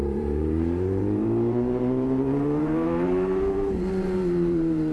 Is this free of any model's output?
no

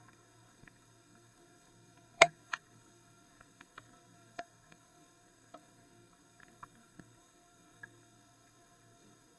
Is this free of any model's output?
no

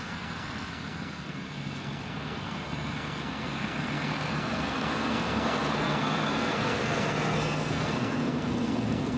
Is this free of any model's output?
no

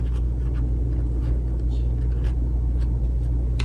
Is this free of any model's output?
yes